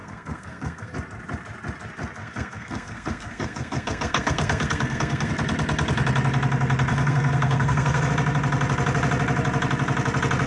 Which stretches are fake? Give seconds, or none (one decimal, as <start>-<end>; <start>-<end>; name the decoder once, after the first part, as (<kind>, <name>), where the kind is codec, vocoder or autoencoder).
0.0-0.9 (codec, SNAC); 2.2-5.3; 6.9-8.1